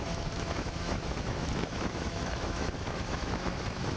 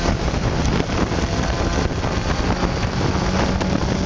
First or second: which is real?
second